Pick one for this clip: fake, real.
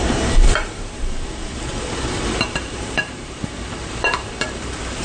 fake